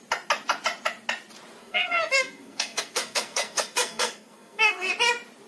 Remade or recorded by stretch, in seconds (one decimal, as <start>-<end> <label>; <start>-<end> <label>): 0.0-1.6 recorded; 1.6-4.9 remade; 4.9-5.5 recorded